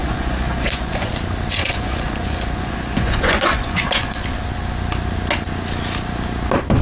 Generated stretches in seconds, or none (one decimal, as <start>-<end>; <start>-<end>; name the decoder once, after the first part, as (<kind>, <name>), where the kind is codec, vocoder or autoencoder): 0.0-1.1 (vocoder, Vocos); 1.6-4.2